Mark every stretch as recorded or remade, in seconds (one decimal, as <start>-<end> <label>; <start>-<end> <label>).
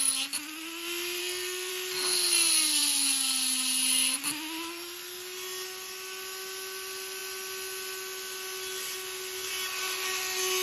0.0-1.2 recorded; 1.2-1.7 remade; 1.7-10.6 recorded